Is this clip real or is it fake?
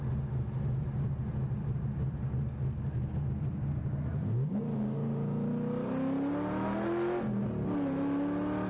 real